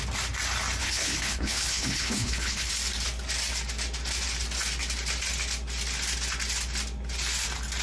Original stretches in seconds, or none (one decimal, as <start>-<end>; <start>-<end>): 0.0-0.8; 2.7-7.8